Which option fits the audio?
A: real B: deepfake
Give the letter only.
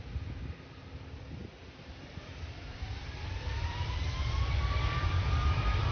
B